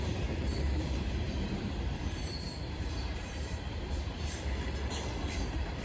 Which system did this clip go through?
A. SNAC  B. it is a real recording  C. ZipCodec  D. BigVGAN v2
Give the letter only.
D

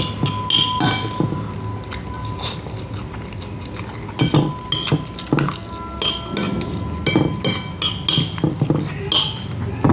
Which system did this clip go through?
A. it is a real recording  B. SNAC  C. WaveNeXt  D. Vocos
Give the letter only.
A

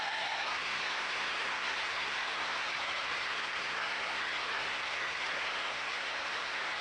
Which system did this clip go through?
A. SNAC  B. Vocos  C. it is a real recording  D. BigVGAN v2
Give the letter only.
A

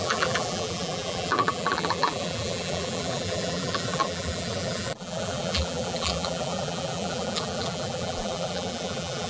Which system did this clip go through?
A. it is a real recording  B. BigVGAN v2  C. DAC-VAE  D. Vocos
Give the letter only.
B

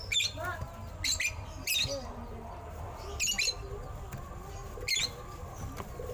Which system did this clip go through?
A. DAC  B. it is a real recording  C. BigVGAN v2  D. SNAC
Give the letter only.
B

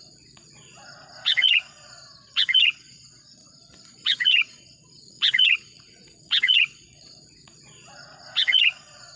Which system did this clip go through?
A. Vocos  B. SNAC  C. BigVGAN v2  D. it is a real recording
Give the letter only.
A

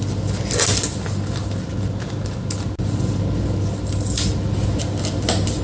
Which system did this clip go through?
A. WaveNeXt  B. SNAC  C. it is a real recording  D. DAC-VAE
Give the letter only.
C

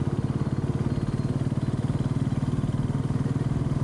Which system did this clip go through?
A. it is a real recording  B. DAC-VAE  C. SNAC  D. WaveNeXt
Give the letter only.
A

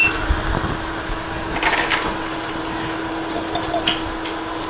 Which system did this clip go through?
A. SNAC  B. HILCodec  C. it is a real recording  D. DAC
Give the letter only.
C